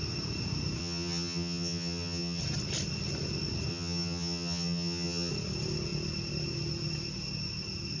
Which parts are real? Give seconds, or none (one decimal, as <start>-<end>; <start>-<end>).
0.0-0.8; 2.4-3.7; 5.3-8.0